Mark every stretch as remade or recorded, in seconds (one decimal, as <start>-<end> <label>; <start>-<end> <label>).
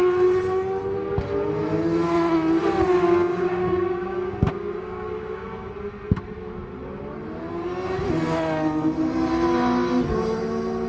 0.0-3.0 recorded; 3.0-5.7 remade; 5.7-10.9 recorded